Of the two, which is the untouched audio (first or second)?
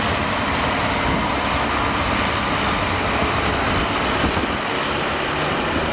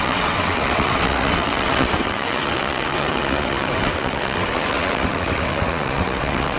first